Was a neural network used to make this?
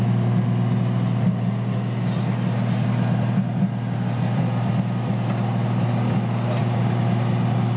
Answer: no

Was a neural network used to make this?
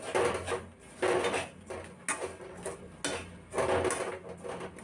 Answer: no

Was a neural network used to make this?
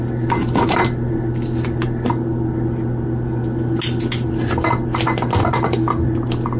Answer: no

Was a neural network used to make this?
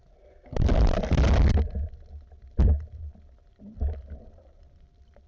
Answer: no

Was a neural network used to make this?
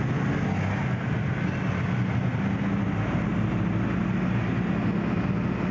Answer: no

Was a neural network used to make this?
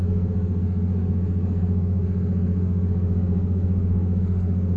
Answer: yes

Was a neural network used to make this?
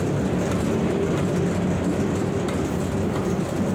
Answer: no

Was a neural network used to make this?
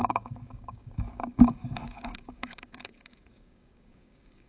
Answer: yes